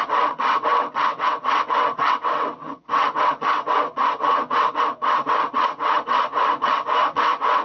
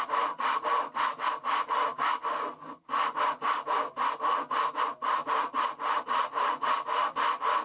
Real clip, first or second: second